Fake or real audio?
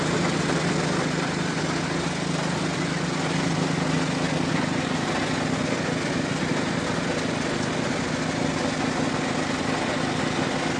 real